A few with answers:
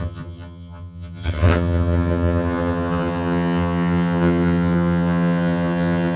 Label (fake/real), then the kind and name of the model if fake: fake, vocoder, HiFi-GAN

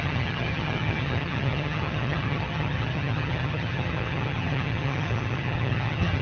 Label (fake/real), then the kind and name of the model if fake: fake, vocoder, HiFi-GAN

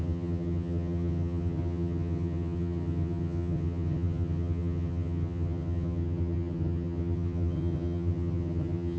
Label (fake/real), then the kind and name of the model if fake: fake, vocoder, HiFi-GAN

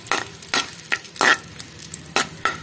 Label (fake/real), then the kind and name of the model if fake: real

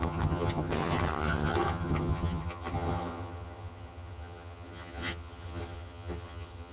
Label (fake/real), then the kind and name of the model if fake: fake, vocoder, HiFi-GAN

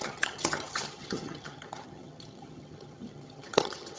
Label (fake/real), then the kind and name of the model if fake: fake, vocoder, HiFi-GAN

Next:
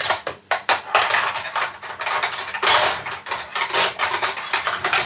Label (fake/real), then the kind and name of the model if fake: real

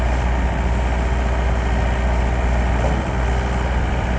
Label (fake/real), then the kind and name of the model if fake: real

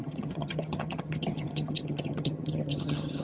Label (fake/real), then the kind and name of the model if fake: fake, vocoder, HiFi-GAN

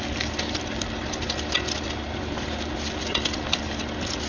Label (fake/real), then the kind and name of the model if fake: real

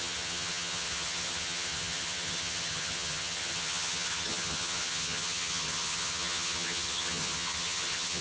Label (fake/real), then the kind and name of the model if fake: fake, vocoder, HiFi-GAN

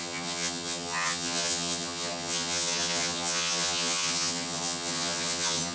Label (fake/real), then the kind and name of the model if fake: fake, vocoder, HiFi-GAN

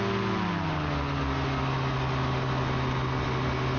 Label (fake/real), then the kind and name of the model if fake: real